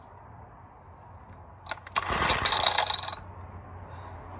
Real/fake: real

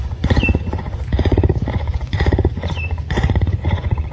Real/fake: fake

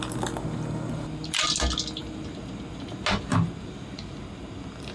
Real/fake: real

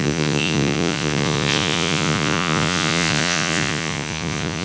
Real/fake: fake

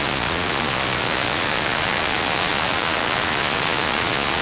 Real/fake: fake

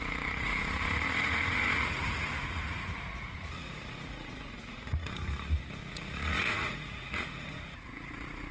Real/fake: fake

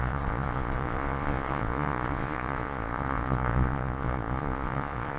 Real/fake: fake